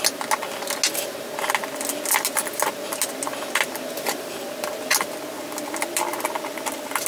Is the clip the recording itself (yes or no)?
yes